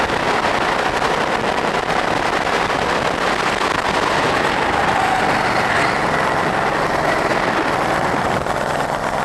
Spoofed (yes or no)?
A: no